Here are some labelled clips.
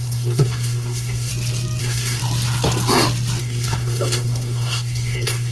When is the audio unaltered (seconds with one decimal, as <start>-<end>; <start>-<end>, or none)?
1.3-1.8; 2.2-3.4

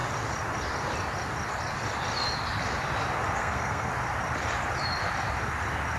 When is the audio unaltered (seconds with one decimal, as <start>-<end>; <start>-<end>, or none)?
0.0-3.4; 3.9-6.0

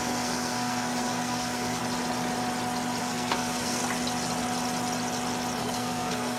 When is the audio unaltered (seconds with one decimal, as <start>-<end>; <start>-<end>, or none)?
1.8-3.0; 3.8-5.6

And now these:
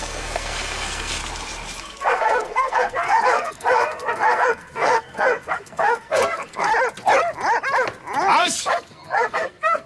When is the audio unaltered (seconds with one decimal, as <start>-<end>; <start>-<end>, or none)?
1.2-1.8; 6.7-8.4

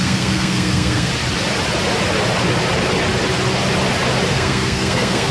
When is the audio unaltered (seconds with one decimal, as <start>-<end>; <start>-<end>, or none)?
1.1-4.3

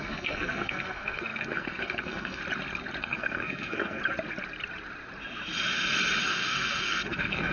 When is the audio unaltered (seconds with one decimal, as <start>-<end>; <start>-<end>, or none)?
2.4-3.0; 4.0-6.2

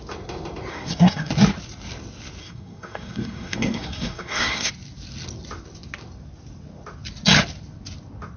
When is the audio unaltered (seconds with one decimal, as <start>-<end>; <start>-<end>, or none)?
0.0-0.7; 1.3-2.4; 4.7-8.4